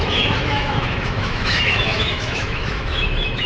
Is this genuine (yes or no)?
no